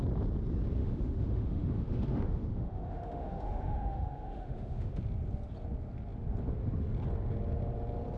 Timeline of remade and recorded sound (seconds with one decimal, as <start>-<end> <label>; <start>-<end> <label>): 0.0-0.8 recorded; 0.8-5.0 remade; 5.0-8.2 recorded